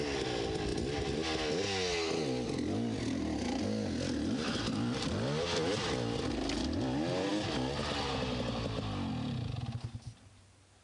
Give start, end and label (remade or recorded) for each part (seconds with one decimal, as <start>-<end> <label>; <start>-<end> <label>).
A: 0.0-10.8 recorded